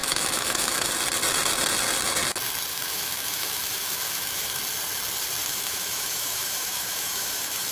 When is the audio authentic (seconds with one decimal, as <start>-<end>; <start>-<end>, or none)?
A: 0.9-2.7; 4.6-5.4